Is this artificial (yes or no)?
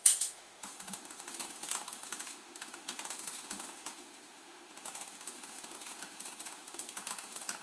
yes